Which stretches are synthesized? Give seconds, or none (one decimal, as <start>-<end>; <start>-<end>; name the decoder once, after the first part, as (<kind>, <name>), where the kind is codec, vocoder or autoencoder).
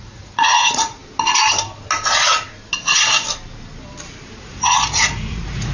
0.0-1.0 (vocoder, Vocos); 4.4-5.7